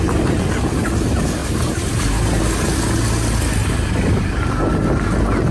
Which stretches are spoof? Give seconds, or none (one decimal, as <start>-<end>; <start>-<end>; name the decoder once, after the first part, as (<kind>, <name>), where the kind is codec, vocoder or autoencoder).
1.4-2.4 (vocoder, BigVGAN v2); 3.6-4.3